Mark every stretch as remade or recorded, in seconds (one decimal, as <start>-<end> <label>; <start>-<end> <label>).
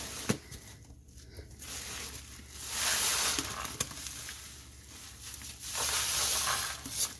0.0-7.2 recorded